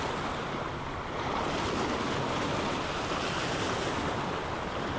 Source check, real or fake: real